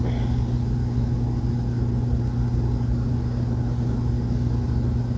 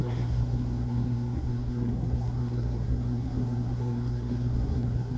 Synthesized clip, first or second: second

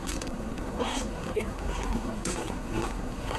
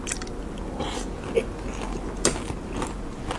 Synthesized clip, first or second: first